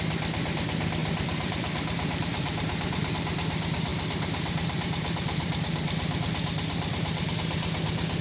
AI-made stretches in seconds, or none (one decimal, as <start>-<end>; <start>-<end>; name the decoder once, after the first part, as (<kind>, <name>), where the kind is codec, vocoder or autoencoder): 1.0-3.1 (vocoder, BigVGAN v2); 3.9-7.3